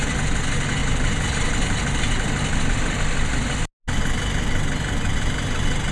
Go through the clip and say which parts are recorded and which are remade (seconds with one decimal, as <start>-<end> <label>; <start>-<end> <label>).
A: 0.0-0.8 recorded; 0.8-3.0 remade; 3.0-5.9 recorded